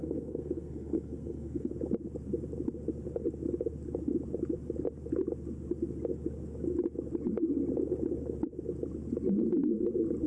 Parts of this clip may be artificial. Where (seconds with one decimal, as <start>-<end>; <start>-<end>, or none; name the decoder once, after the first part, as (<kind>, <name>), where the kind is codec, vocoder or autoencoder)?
0.0-1.7 (codec, SNAC)